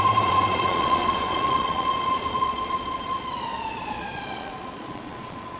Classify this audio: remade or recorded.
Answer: remade